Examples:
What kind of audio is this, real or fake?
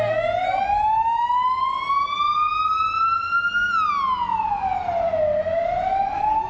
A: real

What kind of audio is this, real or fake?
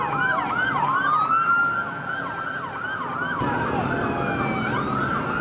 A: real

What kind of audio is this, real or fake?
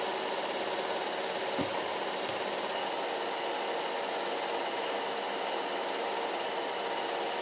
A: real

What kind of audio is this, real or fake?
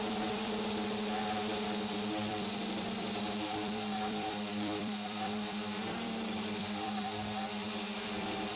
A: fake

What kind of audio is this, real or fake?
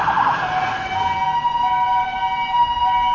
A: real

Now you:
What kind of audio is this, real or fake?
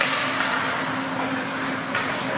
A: real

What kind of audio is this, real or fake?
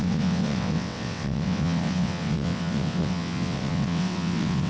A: fake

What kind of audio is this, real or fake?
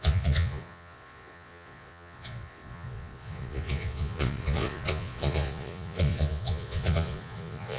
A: fake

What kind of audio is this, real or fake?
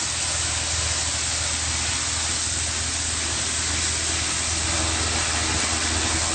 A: real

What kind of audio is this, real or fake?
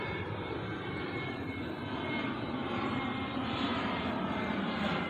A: fake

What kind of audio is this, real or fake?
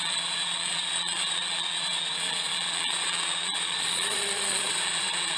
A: fake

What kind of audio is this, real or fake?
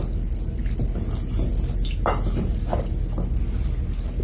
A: real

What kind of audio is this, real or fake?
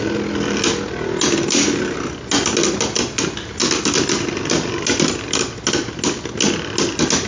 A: real